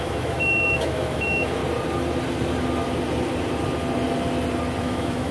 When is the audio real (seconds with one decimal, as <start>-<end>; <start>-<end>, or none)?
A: 1.6-4.8